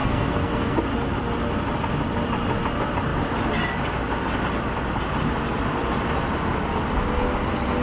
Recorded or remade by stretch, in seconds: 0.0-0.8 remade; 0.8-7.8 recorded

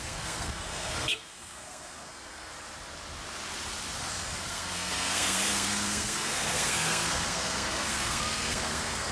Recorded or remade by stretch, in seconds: 0.0-2.5 remade; 2.5-4.1 recorded; 4.1-9.1 remade

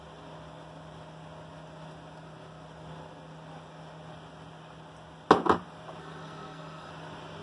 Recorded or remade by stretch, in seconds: 0.0-6.0 recorded; 6.0-6.9 remade; 6.9-7.4 recorded

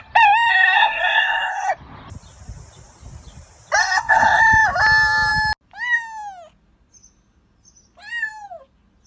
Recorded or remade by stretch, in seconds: 0.0-0.5 recorded; 0.5-1.7 remade; 1.7-3.8 recorded; 3.8-4.4 remade; 4.4-9.1 recorded

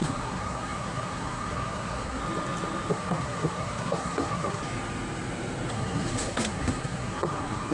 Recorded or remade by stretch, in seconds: 0.0-2.2 remade; 2.2-2.9 recorded; 2.9-4.6 remade; 4.6-5.7 recorded; 5.7-7.7 remade

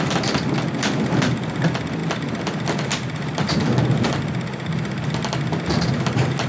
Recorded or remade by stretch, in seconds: 0.0-6.5 recorded

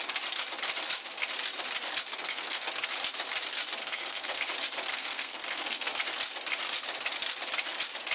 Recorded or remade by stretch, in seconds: 0.0-2.1 recorded; 2.1-2.7 remade; 2.7-3.8 recorded; 3.8-4.4 remade; 4.4-4.9 recorded; 4.9-5.9 remade; 5.9-8.1 recorded

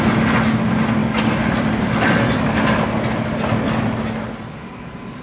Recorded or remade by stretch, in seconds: 0.0-5.2 recorded